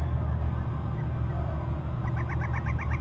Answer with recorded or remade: recorded